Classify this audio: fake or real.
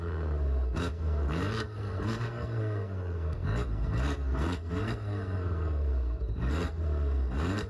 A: fake